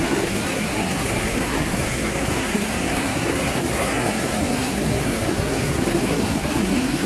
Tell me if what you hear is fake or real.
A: fake